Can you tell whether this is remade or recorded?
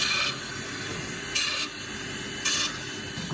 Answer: recorded